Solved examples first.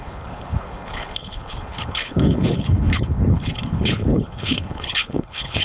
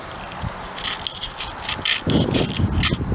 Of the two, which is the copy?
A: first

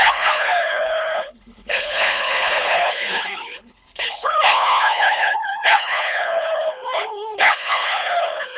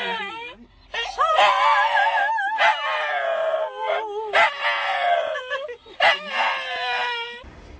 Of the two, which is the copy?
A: first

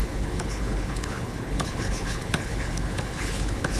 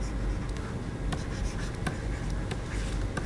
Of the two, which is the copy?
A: first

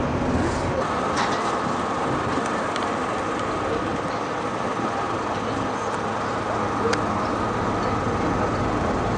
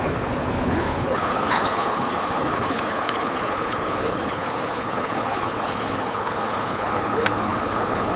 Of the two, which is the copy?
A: second